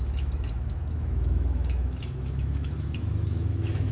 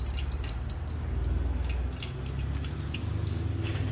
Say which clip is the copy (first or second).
first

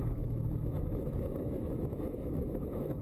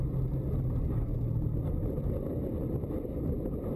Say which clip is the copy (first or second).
first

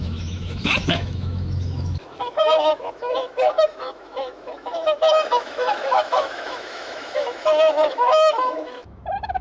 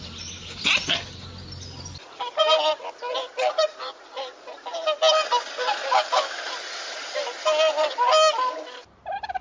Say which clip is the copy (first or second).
first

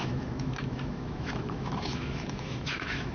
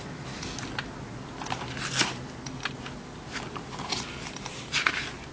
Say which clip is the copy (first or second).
first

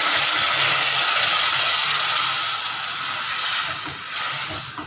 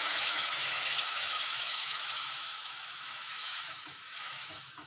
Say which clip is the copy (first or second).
second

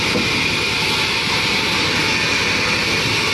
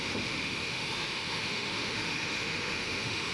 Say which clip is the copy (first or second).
second